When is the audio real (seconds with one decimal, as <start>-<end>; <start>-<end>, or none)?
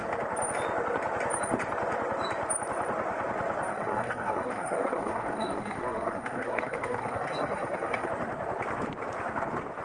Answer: 0.0-3.7; 8.1-9.8